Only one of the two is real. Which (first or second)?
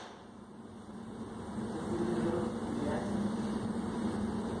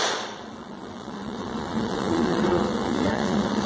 first